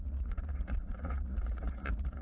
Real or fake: fake